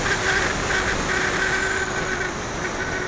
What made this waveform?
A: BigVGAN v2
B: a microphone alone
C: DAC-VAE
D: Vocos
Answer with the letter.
B